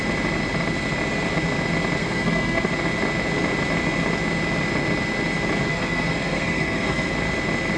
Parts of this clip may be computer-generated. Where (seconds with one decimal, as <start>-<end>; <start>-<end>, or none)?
2.0-2.7; 5.7-7.1